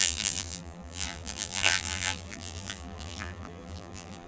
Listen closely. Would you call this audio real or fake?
fake